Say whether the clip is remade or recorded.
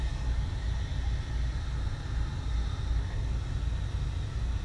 recorded